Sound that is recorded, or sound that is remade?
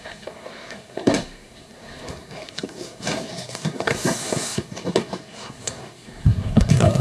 remade